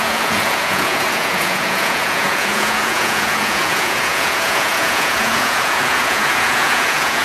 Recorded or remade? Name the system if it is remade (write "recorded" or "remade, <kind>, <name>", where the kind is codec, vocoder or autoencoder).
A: remade, vocoder, Vocos